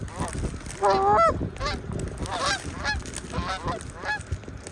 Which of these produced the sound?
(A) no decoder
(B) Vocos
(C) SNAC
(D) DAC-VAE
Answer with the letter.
A